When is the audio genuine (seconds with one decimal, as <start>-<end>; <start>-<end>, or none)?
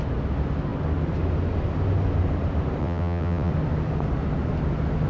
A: 0.0-2.8; 3.5-5.1